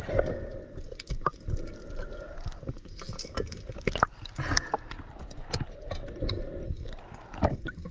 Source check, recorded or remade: recorded